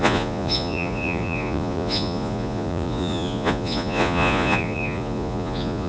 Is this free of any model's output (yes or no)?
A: no